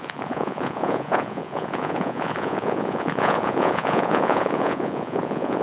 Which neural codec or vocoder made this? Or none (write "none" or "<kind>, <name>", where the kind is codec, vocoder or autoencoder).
vocoder, Vocos